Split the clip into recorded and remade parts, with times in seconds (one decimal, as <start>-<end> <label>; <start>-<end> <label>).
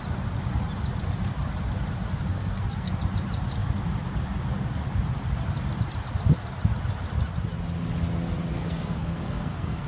0.0-2.3 recorded; 2.3-2.9 remade; 2.9-8.5 recorded; 8.5-9.9 remade